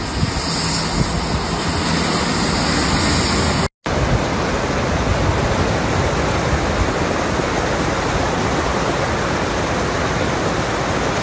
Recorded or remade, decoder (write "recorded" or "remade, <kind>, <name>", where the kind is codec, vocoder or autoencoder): recorded